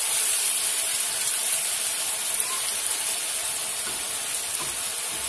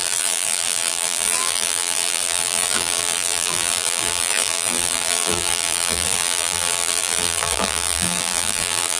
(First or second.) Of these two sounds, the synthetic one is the second